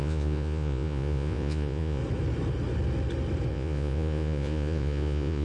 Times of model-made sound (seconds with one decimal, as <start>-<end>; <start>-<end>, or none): 0.0-2.0; 3.5-5.4